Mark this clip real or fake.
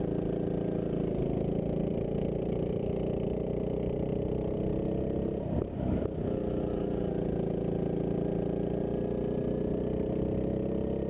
real